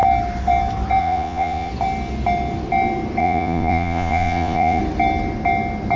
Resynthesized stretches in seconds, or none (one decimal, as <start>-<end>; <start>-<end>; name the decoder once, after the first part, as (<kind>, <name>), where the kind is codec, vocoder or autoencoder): 1.0-1.7 (vocoder, Vocos); 3.2-4.8